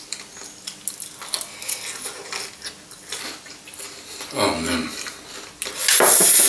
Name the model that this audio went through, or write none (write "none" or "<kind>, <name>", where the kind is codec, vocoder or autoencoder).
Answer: none